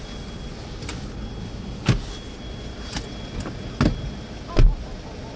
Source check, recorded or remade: recorded